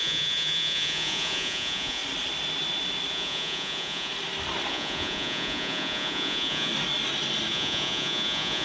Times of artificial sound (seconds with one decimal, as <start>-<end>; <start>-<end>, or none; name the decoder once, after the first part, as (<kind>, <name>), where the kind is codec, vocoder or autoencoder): 0.0-2.0 (vocoder, Vocos); 3.1-4.1; 4.7-6.7; 7.5-8.6